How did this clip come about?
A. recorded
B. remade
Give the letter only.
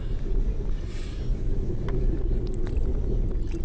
A